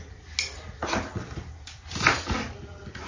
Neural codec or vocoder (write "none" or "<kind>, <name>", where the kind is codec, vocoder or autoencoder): none